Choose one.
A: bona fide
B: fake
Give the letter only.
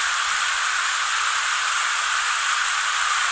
A